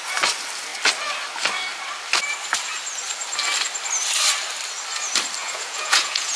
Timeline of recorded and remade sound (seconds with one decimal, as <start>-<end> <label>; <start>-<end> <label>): 0.0-5.4 recorded; 5.4-6.4 remade